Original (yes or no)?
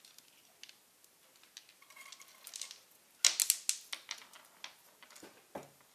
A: yes